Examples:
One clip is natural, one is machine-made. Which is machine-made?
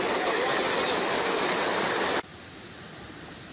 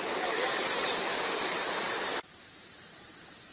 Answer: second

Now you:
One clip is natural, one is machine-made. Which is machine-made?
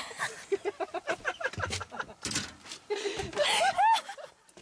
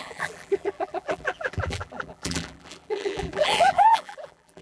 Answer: second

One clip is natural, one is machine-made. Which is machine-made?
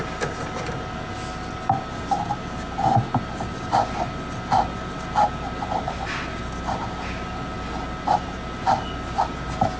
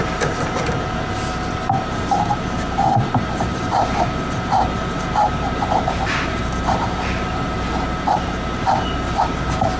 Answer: second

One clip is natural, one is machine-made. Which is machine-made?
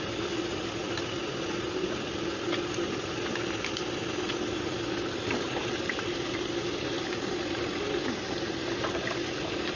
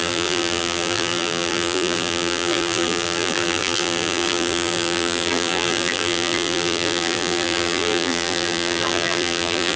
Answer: second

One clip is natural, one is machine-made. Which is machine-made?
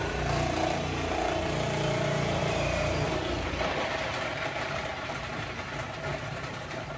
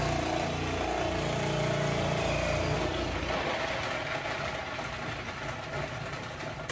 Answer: first